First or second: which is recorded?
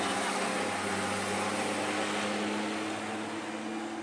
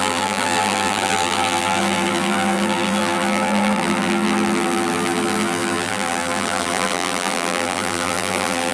first